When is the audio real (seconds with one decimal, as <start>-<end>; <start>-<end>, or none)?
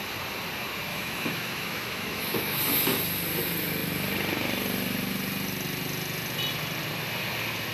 0.0-0.9; 2.6-7.7